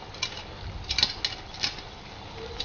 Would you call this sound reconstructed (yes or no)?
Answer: no